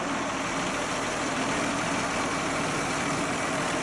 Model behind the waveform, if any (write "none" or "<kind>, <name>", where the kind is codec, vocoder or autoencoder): none